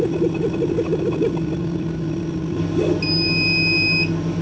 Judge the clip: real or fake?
real